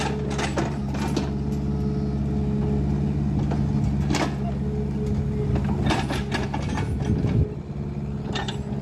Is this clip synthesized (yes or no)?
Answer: no